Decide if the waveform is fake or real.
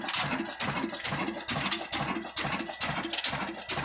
real